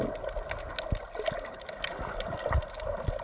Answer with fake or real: real